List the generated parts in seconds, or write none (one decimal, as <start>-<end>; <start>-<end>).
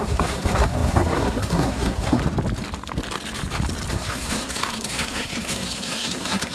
0.0-2.2; 3.9-6.5